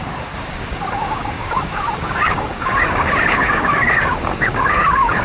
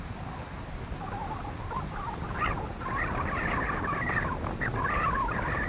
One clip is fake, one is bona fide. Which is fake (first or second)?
first